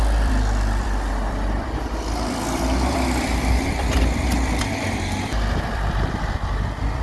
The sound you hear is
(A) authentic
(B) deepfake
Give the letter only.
B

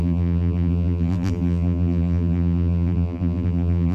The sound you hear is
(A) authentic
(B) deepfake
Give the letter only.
B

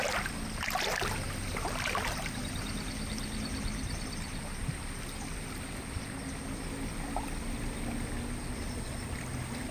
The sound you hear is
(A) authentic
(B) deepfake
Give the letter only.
A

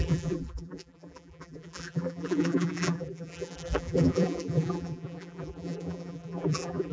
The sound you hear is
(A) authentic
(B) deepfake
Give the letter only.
B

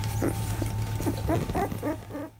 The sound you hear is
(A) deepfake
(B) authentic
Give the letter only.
B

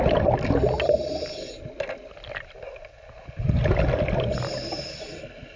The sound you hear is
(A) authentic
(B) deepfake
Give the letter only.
A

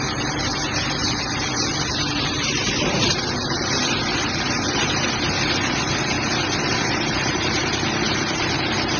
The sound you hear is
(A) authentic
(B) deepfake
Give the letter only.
B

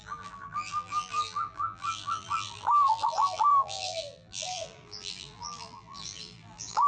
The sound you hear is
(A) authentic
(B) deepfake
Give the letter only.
B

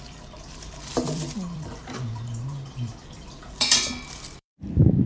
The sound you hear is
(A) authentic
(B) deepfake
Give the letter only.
B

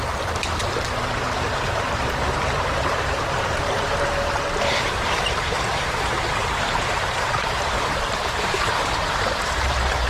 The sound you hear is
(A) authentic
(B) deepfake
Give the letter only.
B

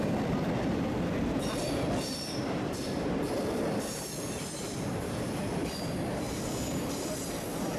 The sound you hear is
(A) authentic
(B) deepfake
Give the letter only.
B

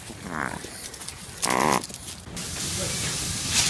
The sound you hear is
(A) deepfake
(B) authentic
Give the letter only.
B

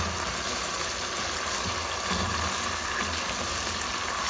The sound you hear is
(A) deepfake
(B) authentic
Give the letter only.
B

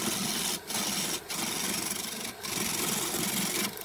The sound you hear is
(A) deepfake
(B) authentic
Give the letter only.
B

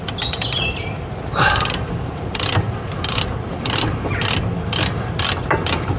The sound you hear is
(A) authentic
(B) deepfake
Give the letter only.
B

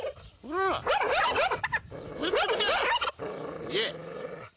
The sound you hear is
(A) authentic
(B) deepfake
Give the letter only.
A